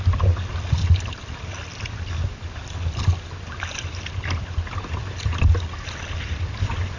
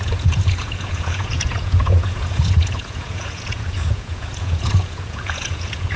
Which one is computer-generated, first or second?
second